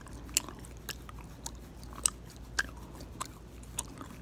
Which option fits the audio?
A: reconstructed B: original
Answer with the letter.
B